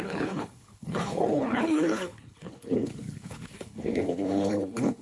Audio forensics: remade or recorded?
remade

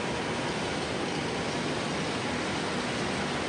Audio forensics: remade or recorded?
recorded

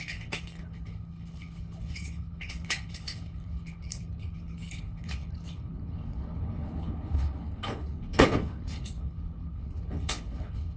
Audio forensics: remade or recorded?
remade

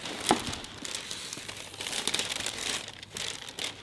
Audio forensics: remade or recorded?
recorded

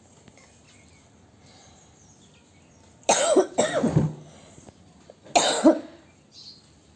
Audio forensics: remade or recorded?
recorded